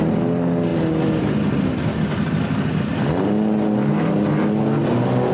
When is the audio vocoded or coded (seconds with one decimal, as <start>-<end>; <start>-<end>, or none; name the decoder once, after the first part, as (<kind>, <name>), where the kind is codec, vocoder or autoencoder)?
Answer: none